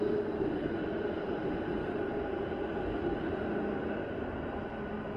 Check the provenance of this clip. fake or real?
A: real